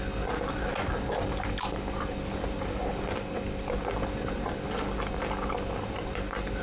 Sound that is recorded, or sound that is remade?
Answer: recorded